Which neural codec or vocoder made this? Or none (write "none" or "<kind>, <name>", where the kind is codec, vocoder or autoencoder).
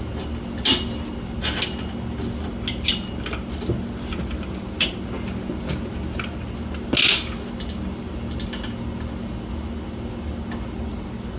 none